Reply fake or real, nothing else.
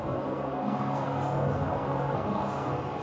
fake